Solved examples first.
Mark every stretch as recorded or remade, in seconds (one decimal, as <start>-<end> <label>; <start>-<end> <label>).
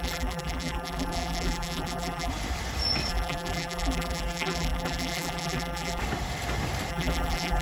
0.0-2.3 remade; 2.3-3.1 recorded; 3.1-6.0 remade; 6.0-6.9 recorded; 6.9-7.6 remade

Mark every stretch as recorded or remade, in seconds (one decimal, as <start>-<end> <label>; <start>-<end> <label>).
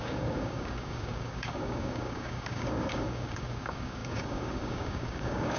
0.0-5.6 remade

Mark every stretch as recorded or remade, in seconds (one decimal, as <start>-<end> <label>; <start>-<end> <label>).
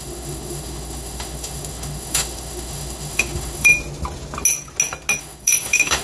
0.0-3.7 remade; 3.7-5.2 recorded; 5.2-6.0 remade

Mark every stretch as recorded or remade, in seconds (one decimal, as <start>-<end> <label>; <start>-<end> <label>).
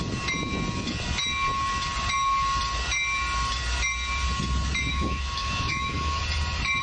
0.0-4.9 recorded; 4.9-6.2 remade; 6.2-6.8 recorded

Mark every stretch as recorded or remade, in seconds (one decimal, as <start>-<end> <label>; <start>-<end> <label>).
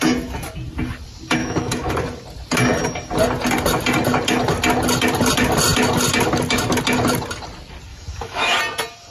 0.0-1.4 recorded; 1.4-1.9 remade; 1.9-7.9 recorded; 7.9-8.6 remade; 8.6-9.1 recorded